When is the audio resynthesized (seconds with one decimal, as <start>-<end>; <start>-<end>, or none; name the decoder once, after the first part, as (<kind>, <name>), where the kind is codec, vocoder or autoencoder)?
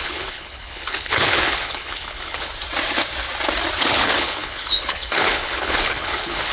0.0-2.5 (codec, HILCodec); 3.8-6.5